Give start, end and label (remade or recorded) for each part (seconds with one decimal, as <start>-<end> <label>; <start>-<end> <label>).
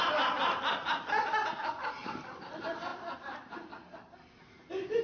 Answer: 0.0-2.0 recorded; 2.0-2.5 remade; 2.5-2.9 recorded; 2.9-3.7 remade; 3.7-5.0 recorded